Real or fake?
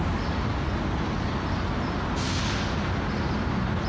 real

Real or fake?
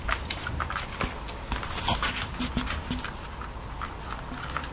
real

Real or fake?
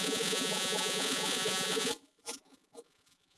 fake